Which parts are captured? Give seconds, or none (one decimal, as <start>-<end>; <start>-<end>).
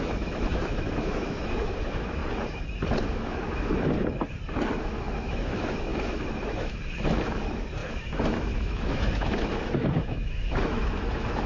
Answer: 2.2-3.1; 3.7-4.7